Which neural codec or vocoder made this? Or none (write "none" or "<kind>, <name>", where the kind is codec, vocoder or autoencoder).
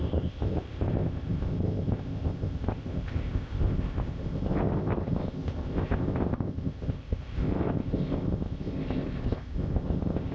codec, ZipCodec